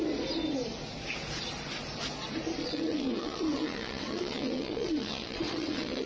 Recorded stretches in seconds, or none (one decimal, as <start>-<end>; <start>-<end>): 0.0-2.6